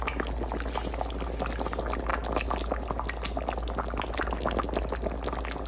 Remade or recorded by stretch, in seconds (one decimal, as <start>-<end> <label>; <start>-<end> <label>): 0.0-5.7 recorded

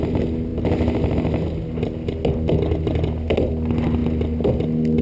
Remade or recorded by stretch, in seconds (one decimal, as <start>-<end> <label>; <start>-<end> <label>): 0.0-5.0 recorded

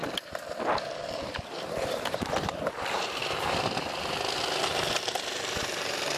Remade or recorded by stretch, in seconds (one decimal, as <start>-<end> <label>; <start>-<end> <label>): 0.0-6.2 remade